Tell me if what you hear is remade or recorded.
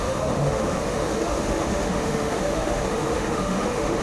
remade